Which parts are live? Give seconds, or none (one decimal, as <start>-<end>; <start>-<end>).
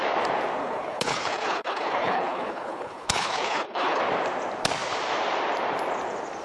0.0-0.6; 4.0-6.4